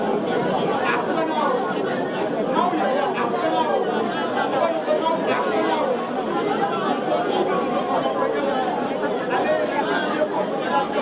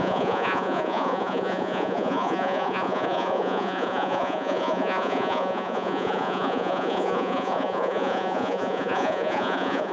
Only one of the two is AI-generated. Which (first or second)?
second